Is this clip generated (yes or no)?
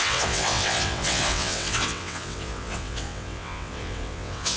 yes